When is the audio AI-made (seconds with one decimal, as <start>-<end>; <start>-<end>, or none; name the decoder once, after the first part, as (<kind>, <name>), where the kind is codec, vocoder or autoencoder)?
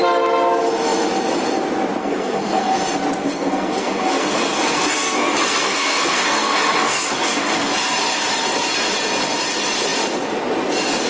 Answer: 2.0-2.8 (codec, SNAC); 3.2-7.7